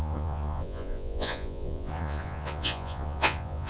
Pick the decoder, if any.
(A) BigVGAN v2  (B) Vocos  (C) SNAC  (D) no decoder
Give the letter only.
B